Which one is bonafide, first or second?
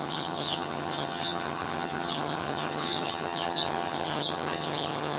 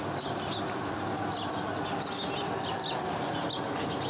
second